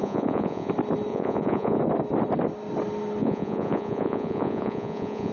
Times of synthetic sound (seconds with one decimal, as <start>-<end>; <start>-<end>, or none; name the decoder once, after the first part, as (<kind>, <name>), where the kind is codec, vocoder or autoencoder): 0.0-0.7 (vocoder, Vocos); 1.1-1.8; 3.2-5.3